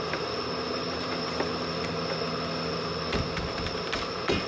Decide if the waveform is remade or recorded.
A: recorded